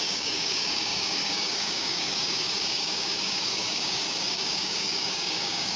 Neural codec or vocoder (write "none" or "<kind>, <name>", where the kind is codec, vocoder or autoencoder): codec, DAC